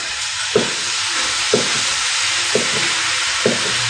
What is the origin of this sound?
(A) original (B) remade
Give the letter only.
A